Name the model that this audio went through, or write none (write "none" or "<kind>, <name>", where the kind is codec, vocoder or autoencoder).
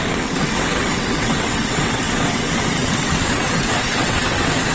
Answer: vocoder, WaveNeXt